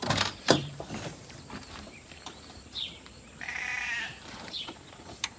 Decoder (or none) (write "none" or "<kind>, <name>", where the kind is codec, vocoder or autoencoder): vocoder, BigVGAN v2